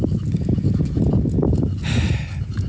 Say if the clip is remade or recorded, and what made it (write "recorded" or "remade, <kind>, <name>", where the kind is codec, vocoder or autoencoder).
recorded